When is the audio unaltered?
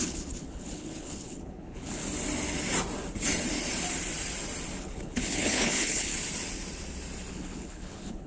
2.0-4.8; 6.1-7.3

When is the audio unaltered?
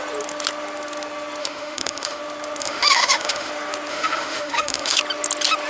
0.0-1.4; 2.2-2.6; 3.5-3.9; 5.0-5.7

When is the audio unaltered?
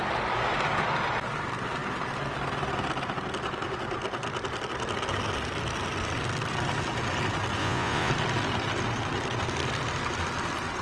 0.0-7.6; 8.1-10.8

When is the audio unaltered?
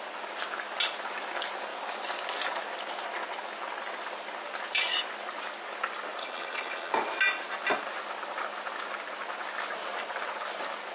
0.0-6.2; 6.9-10.9